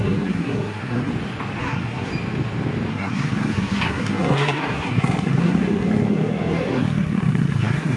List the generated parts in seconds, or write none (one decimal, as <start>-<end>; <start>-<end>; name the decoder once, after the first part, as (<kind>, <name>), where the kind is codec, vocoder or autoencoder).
0.0-1.1 (codec, SNAC); 1.6-2.1; 2.9-8.0